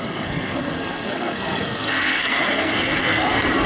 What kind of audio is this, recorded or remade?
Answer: remade